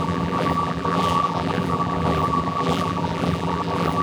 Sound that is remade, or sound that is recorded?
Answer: remade